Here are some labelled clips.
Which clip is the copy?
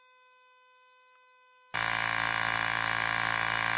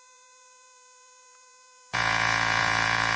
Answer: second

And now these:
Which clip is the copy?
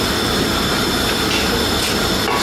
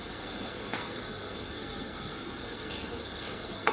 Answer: second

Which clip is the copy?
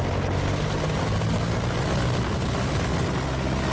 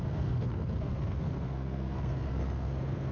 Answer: second